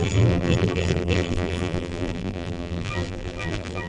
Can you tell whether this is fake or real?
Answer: fake